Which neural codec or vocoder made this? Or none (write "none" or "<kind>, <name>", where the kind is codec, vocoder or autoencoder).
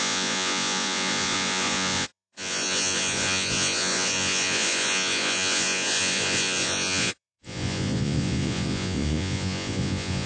vocoder, Vocos